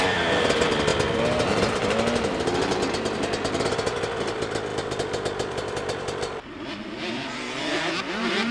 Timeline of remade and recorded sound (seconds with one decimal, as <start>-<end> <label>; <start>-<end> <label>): 0.0-0.9 remade; 0.9-3.7 recorded; 3.7-8.5 remade